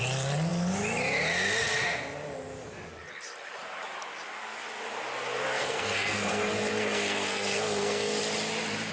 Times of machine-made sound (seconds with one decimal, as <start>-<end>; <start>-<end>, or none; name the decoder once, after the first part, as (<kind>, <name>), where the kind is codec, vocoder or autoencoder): 5.5-8.2 (codec, SNAC)